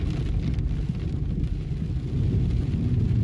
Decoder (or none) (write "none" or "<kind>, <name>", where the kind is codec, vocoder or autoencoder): none